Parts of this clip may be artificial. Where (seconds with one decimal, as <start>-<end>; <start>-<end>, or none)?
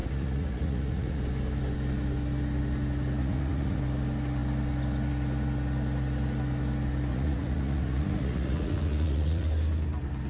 0.0-1.2; 3.2-3.8; 7.1-9.5